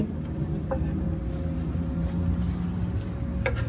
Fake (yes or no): no